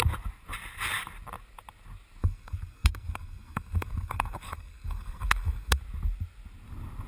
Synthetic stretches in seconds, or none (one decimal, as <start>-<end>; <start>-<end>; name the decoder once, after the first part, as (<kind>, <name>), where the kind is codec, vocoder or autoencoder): 2.2-5.8 (codec, SNAC)